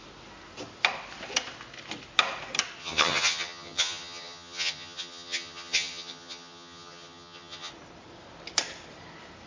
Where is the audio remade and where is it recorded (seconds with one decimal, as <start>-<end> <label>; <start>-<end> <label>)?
0.0-2.8 recorded; 2.8-7.7 remade; 7.7-9.5 recorded